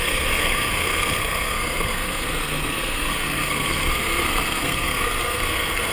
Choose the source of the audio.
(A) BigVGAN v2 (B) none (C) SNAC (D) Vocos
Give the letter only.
C